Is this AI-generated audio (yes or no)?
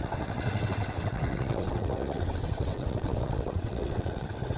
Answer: yes